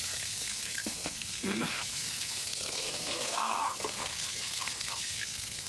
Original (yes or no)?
no